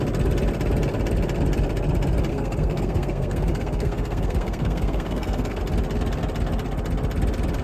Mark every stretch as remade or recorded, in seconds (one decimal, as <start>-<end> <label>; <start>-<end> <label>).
0.0-2.3 recorded; 2.3-5.6 remade; 5.6-7.6 recorded